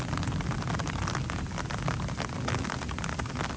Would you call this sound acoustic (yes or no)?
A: yes